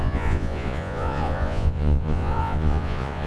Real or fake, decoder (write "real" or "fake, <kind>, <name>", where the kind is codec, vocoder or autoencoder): fake, vocoder, Vocos